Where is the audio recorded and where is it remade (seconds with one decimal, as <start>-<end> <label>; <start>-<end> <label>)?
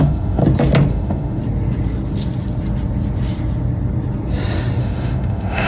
0.0-0.4 remade; 0.4-0.9 recorded; 0.9-1.4 remade; 1.4-4.8 recorded; 4.8-5.7 remade